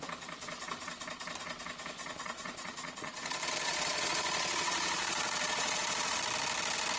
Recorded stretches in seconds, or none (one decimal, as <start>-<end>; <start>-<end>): 0.0-2.0; 6.2-7.0